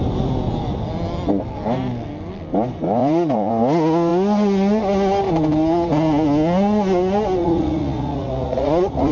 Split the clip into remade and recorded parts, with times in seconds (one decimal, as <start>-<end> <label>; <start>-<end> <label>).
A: 0.0-3.0 recorded; 3.0-3.5 remade; 3.5-7.4 recorded; 7.4-9.1 remade